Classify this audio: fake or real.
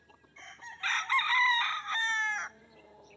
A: fake